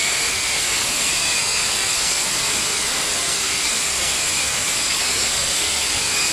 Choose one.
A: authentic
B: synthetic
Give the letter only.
B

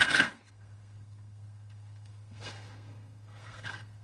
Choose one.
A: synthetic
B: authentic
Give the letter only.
A